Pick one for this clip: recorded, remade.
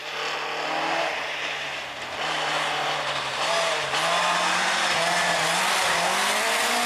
recorded